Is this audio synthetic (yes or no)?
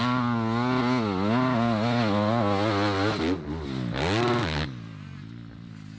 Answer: no